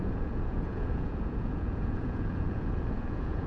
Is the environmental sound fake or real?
fake